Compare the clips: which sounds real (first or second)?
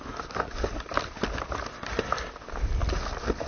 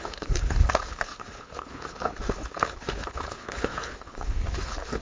first